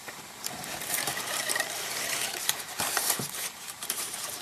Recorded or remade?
remade